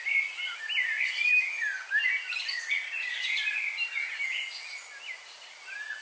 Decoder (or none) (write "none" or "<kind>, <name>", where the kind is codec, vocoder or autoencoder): none